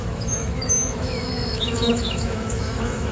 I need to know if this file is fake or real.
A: fake